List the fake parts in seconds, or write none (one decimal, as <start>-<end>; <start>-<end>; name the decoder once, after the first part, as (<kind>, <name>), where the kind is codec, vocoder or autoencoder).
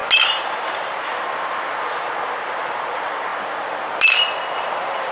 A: 0.7-1.1 (vocoder, BigVGAN v2); 2.6-3.3; 4.6-5.1